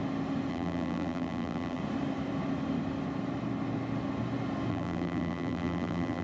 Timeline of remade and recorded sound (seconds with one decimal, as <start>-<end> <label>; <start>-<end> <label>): 0.0-0.5 recorded; 0.5-1.8 remade; 1.8-4.7 recorded; 4.7-6.2 remade